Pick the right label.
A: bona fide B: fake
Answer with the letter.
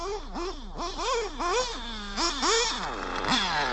A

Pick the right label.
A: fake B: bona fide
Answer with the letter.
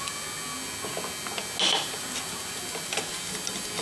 B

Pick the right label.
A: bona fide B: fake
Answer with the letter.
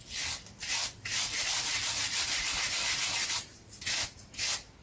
A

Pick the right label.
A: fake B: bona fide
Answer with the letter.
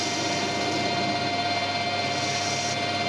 B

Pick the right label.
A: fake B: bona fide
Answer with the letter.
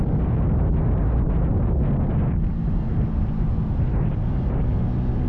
B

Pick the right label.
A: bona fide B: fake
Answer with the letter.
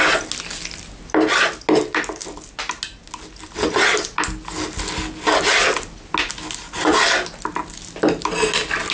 A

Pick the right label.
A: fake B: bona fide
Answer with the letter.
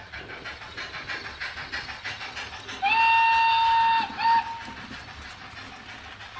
B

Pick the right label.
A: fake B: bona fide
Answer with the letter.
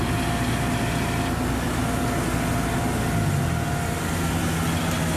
B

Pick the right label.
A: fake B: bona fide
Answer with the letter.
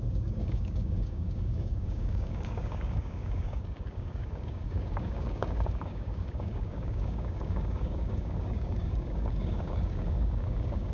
A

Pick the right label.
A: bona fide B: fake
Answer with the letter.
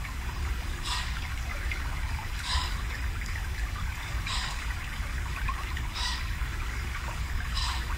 B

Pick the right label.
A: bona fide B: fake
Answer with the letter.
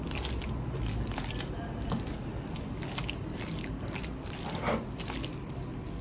A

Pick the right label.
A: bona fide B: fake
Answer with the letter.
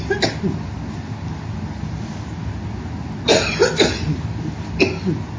A